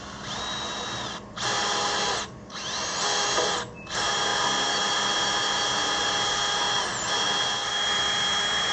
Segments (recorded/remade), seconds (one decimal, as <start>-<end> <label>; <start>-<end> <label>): 0.0-8.7 recorded